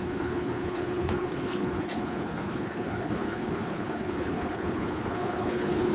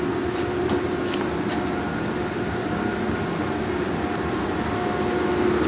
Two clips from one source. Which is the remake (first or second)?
first